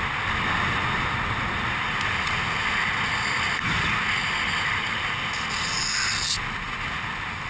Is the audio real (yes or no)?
yes